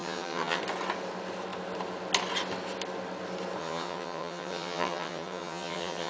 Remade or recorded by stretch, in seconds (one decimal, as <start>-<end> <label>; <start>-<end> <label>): 0.0-0.6 remade; 0.6-3.6 recorded; 3.6-6.1 remade